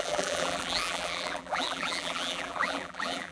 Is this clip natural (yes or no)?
no